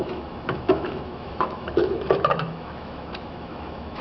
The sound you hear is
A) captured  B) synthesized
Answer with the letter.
B